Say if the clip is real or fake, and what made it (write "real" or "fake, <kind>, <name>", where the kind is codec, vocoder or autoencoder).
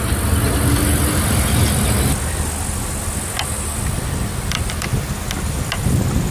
real